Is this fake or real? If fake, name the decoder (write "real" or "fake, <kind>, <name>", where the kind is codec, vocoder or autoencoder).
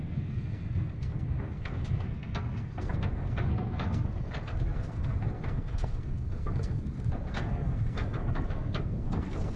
fake, codec, SNAC